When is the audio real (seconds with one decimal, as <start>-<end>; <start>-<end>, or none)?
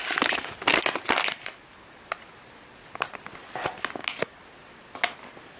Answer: 0.0-5.6